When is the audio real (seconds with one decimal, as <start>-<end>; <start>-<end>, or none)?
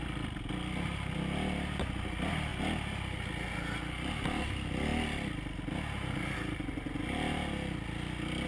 0.0-8.5